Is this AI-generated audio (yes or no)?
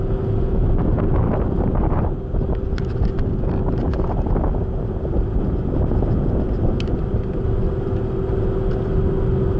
no